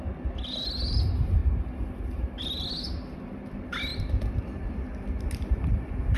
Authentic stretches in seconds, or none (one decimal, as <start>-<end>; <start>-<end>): 0.0-3.9; 4.8-6.2